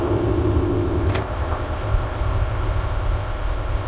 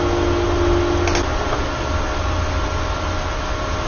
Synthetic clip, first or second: first